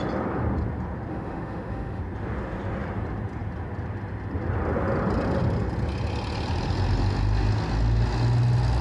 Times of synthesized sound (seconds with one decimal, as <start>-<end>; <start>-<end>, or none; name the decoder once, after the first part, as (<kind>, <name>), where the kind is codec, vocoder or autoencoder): 1.1-2.0 (autoencoder, DAC-VAE)